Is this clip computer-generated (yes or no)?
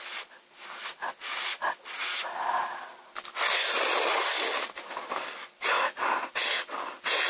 no